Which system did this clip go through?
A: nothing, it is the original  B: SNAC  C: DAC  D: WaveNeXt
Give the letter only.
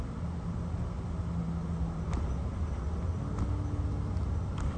A